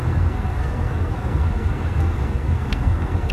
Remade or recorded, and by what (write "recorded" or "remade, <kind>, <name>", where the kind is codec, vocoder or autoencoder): remade, codec, SNAC